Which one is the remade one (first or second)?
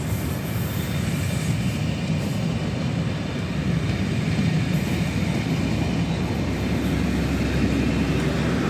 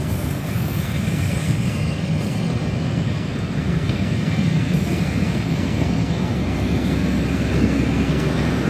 second